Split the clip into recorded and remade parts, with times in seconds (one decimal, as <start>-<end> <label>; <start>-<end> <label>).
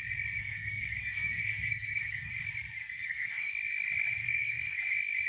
0.0-0.4 recorded; 0.4-2.3 remade; 2.3-2.8 recorded; 2.8-3.5 remade; 3.5-4.2 recorded; 4.2-4.8 remade; 4.8-5.3 recorded